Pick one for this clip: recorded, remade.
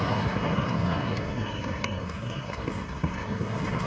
remade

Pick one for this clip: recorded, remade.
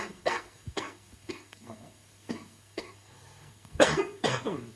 remade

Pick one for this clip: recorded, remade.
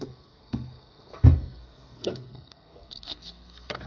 remade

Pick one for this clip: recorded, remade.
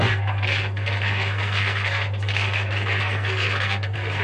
remade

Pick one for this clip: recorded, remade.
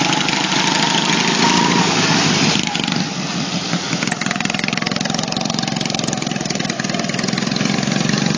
recorded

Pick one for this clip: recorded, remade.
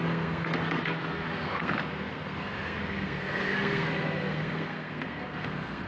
remade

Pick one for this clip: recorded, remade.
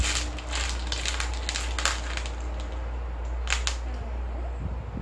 recorded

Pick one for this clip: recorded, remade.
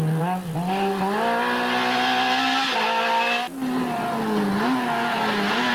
recorded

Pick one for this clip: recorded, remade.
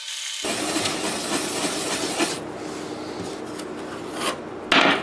recorded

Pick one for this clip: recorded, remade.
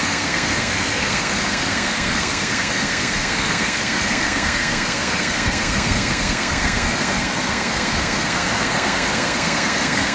remade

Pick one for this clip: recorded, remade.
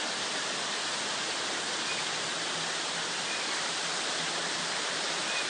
recorded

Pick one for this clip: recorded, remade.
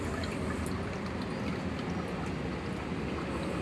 recorded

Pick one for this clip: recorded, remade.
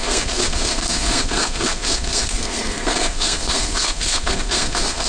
remade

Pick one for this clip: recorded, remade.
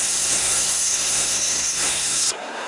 remade